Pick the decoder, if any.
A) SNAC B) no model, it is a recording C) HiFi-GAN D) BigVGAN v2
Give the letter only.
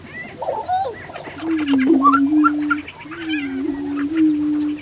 B